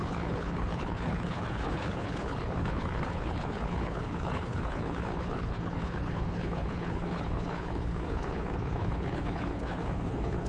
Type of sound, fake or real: fake